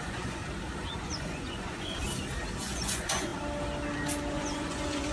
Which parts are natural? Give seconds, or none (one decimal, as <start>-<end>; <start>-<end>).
0.4-1.0; 2.0-2.6; 3.3-4.3

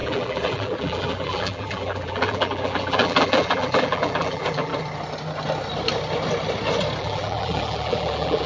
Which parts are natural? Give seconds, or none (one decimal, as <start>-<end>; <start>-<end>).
4.7-7.0

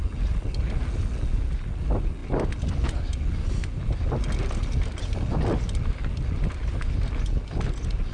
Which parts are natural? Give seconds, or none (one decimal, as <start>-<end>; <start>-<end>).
0.0-8.1